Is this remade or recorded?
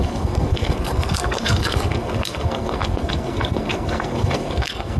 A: remade